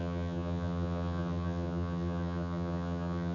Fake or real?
fake